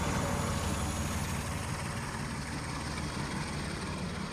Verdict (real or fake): real